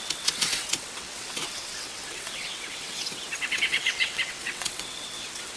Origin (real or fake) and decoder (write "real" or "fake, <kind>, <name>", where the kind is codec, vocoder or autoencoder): fake, vocoder, WaveNeXt